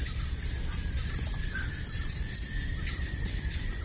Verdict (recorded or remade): remade